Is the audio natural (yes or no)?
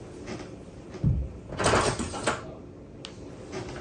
yes